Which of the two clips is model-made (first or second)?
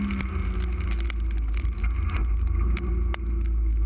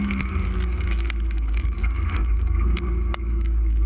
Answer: second